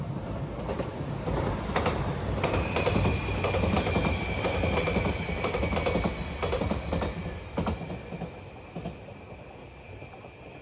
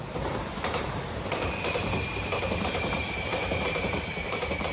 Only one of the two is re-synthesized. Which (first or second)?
second